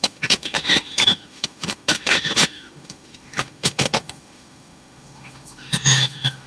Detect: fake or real fake